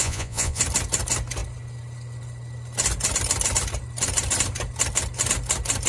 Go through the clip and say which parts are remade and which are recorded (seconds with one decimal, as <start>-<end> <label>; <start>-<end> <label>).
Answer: 0.0-0.6 remade; 0.6-5.9 recorded